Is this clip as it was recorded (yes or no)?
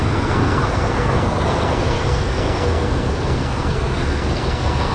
no